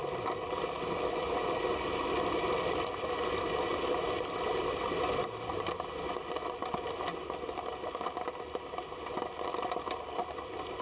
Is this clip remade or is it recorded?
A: recorded